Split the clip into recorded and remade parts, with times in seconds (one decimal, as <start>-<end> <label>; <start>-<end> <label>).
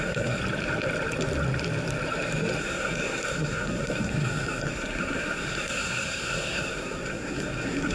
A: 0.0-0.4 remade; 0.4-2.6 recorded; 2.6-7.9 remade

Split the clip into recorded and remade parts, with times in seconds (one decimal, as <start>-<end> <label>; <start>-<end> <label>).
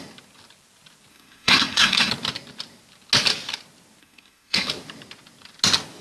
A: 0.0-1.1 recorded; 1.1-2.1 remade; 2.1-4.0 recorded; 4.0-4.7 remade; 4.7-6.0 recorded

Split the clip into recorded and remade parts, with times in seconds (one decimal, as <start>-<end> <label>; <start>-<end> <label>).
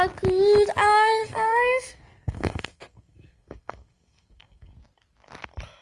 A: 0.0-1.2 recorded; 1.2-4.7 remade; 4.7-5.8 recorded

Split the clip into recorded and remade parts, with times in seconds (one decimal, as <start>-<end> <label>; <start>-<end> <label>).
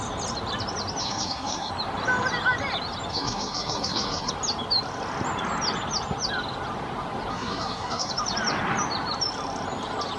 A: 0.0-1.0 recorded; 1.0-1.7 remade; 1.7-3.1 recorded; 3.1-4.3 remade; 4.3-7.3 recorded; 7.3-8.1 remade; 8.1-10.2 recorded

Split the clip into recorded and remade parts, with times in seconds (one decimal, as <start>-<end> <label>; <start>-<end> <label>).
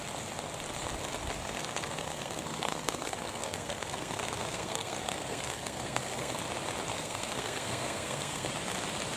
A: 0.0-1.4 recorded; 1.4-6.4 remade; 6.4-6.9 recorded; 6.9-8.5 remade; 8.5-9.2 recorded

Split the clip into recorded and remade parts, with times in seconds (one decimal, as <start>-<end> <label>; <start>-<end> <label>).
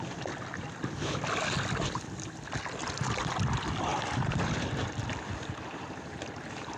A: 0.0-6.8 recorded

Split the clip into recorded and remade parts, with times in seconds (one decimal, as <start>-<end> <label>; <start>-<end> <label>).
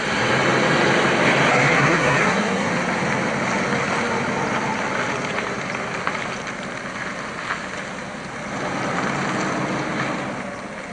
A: 0.0-1.5 recorded; 1.5-2.7 remade; 2.7-10.9 recorded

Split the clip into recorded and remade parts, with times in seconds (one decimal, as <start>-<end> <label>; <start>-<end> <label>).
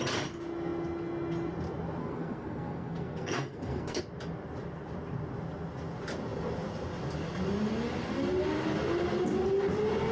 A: 0.0-2.0 recorded; 2.0-4.0 remade; 4.0-10.1 recorded